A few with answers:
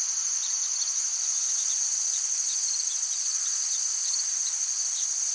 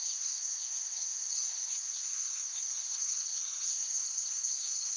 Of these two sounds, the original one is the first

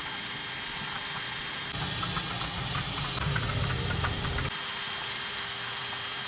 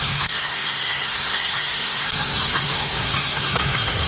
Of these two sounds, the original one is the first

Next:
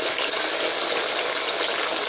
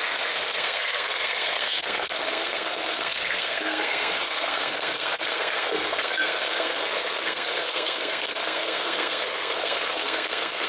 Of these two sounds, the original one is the first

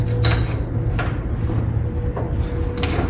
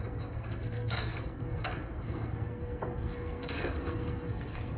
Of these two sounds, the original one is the first